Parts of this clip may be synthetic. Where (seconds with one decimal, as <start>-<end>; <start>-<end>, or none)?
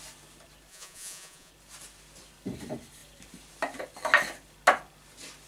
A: 0.7-1.5